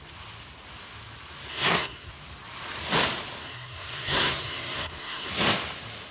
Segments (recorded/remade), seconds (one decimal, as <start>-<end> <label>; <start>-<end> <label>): 0.0-1.5 recorded; 1.5-2.1 remade; 2.1-3.4 recorded; 3.4-5.3 remade; 5.3-6.1 recorded